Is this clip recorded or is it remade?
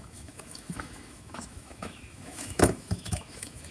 remade